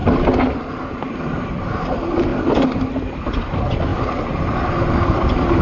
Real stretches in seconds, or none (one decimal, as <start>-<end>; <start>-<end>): 0.0-5.6

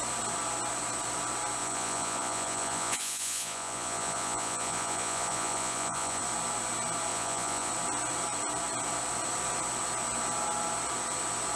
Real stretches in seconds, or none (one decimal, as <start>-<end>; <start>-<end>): 0.0-1.6; 6.2-7.1; 7.7-11.6

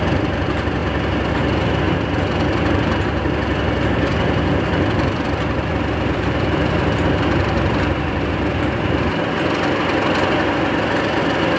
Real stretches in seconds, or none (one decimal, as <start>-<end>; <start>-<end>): 0.0-4.1; 9.2-11.6